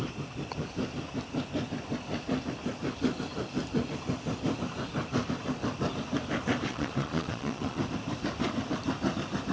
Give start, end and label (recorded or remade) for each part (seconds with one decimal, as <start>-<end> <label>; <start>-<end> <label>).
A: 0.0-6.7 recorded; 6.7-7.8 remade; 7.8-9.5 recorded